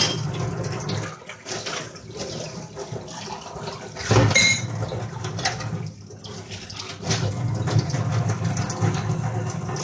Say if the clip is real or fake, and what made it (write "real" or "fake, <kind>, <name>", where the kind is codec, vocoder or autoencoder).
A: real